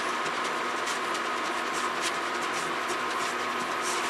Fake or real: real